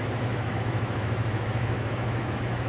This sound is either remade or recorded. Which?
remade